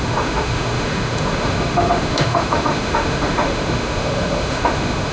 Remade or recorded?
remade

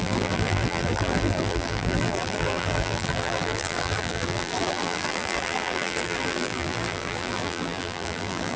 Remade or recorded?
remade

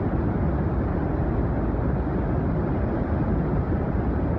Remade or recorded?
recorded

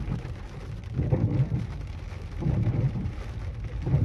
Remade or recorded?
recorded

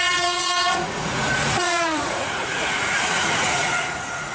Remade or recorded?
remade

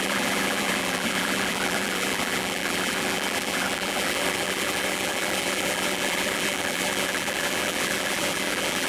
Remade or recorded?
remade